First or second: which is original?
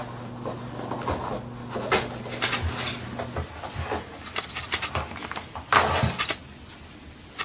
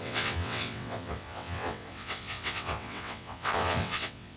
first